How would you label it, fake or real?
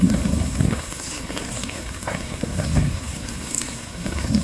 fake